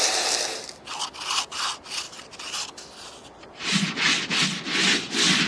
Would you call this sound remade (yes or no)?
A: no